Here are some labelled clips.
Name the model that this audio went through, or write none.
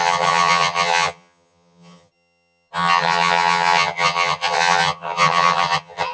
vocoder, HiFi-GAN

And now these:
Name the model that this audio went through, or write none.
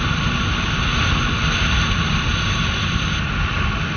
none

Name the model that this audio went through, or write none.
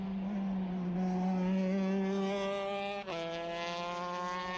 none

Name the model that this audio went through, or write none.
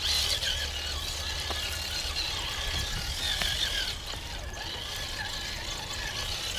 none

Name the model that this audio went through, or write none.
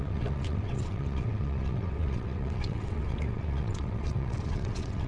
vocoder, WaveNeXt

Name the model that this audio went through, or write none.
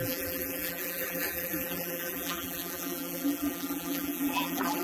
vocoder, BigVGAN v2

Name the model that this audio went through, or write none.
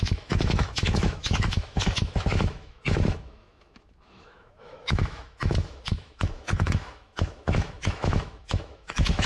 autoencoder, DAC-VAE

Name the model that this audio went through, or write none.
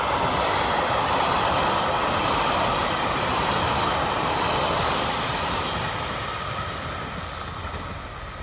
none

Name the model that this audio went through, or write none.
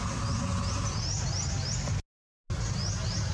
none